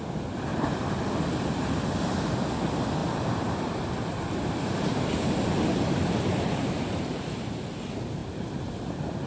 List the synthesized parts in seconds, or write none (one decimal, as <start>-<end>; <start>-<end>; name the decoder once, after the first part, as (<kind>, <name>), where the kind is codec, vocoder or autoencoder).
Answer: 0.5-1.3 (vocoder, BigVGAN v2); 3.0-7.5; 8.2-8.8